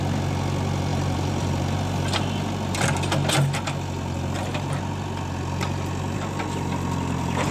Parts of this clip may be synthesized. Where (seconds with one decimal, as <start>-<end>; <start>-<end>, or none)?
0.9-1.6